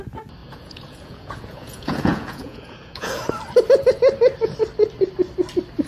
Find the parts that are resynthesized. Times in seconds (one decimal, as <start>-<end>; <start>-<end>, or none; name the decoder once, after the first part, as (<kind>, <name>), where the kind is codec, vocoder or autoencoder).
0.4-3.2 (vocoder, Vocos)